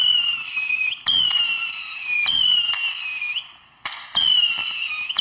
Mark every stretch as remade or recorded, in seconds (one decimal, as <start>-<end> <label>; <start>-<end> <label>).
0.0-5.2 recorded